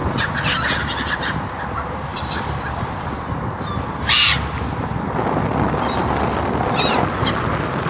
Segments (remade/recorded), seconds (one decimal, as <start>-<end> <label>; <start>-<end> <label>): 0.0-7.9 recorded